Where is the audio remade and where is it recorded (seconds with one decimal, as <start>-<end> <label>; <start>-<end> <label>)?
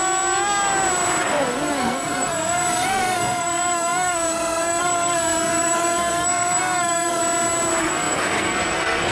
0.0-1.2 recorded; 1.2-7.2 remade; 7.2-7.8 recorded; 7.8-9.1 remade